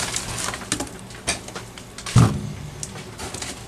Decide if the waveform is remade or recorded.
recorded